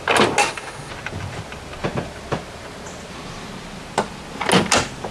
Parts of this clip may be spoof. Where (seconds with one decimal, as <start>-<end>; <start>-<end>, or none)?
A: 0.4-0.9